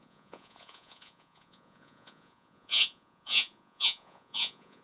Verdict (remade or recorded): remade